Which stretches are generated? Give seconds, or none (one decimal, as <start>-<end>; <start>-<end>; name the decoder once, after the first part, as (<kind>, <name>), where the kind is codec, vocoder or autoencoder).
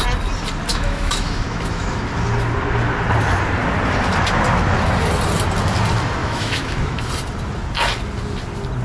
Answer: 0.7-2.0 (autoencoder, DAC-VAE); 6.2-7.1